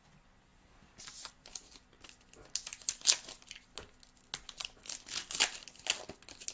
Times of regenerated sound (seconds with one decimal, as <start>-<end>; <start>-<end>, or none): none